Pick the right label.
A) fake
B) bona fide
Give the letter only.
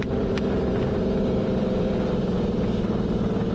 A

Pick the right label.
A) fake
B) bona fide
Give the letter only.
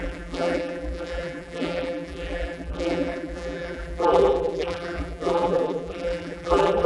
A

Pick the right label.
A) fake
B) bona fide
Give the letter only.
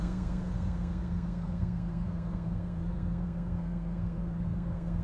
A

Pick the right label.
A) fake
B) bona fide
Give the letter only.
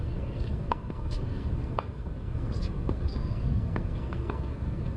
A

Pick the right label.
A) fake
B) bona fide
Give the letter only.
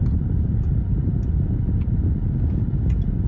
B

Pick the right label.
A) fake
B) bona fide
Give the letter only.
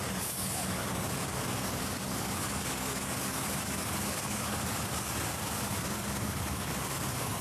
A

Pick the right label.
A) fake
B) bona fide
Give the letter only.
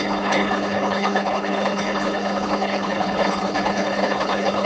A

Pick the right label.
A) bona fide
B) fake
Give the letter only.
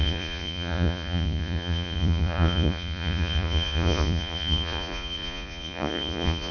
B